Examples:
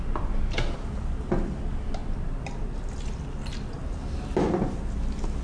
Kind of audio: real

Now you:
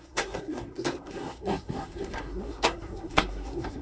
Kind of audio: fake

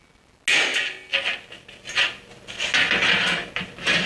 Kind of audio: real